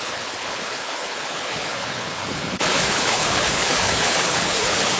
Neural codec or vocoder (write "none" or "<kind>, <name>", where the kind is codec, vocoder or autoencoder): codec, HILCodec